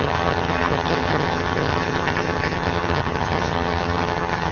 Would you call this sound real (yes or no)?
no